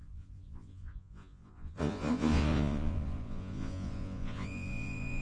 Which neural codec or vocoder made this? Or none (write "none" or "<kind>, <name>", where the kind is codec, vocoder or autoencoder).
vocoder, Vocos